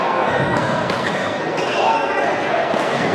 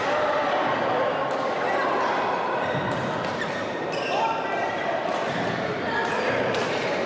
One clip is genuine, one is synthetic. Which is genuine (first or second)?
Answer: second